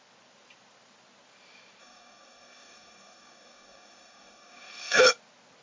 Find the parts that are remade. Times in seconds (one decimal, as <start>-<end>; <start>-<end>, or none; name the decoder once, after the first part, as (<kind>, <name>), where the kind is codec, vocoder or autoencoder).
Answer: 1.8-5.0 (codec, DAC)